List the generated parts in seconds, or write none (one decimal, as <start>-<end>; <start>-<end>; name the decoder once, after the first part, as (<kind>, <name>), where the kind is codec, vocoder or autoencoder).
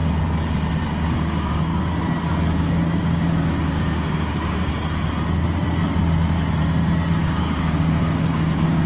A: 0.8-1.7 (codec, DAC); 2.6-4.7; 7.1-8.9